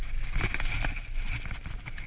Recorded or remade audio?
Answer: recorded